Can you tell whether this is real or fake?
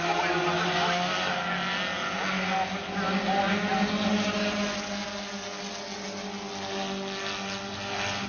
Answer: real